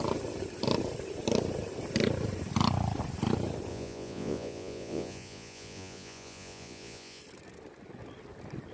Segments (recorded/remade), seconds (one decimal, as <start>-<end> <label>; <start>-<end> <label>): 0.0-3.7 recorded; 3.7-7.2 remade; 7.2-8.7 recorded